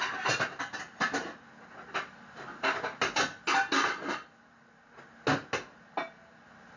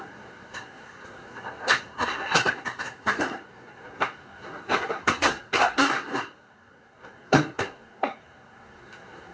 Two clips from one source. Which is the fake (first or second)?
second